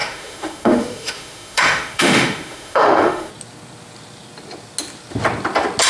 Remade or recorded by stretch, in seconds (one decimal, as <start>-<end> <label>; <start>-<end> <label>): 0.0-3.3 remade; 3.3-5.9 recorded